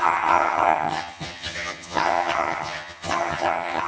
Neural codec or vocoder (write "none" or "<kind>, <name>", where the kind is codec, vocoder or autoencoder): vocoder, HiFi-GAN